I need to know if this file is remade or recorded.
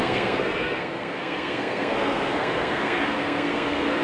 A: remade